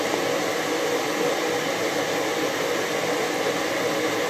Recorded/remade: recorded